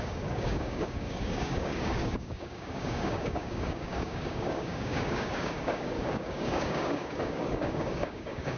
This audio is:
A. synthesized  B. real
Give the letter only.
A